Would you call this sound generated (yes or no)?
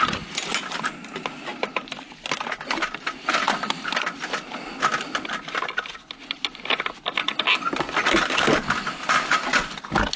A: no